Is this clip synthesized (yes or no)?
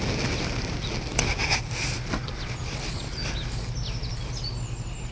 no